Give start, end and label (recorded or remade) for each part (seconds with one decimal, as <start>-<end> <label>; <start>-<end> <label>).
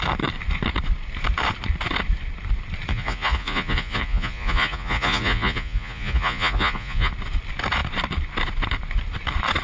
0.0-2.9 recorded; 2.9-7.1 remade; 7.1-9.6 recorded